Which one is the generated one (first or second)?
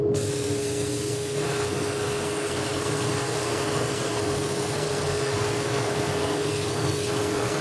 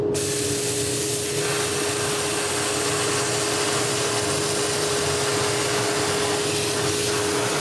first